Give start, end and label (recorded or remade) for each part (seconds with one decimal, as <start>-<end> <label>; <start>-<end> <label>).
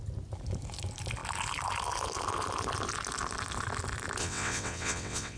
0.0-4.2 recorded; 4.2-5.4 remade